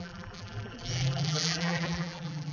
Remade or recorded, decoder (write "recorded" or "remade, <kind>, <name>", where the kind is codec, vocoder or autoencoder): remade, vocoder, BigVGAN v2